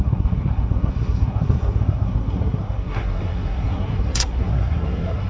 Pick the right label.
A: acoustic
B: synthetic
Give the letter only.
B